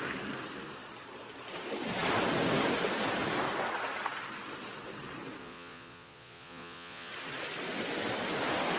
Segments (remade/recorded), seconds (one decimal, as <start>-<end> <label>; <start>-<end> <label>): 0.0-5.4 recorded; 5.4-7.1 remade; 7.1-8.8 recorded